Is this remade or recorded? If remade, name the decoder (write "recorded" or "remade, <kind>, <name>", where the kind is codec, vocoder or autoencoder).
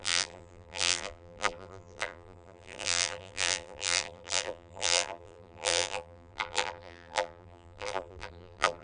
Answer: remade, vocoder, BigVGAN v2